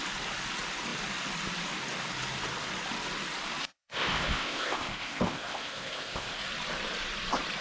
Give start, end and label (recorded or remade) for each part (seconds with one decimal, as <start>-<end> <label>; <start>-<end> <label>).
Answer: 0.0-3.6 recorded; 3.6-6.4 remade; 6.4-7.6 recorded